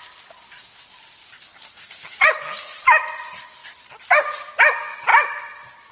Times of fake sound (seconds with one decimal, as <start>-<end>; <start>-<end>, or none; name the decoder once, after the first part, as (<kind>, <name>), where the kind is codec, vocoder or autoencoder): none